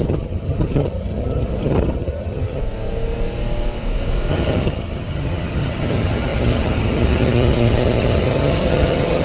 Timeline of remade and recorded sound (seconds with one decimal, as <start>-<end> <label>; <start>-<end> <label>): 0.0-2.6 remade; 2.6-4.3 recorded; 4.3-9.2 remade